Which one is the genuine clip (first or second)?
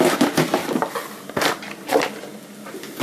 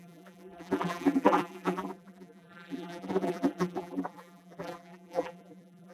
first